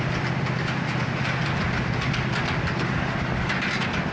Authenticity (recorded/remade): recorded